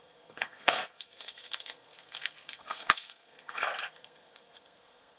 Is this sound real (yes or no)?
no